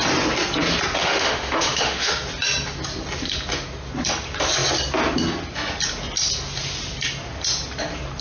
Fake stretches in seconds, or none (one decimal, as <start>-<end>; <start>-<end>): 1.0-2.1